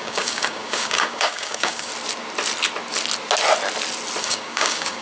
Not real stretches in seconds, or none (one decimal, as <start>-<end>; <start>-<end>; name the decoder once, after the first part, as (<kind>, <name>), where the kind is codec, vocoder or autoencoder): 0.0-1.9 (codec, DAC); 4.2-5.0